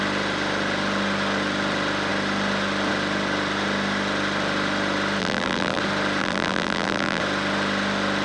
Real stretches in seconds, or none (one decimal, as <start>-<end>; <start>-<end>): 0.0-5.2; 5.8-6.2; 7.2-8.2